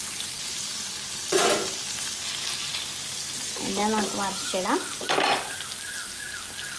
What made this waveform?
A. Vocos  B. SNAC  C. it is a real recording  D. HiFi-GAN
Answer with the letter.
C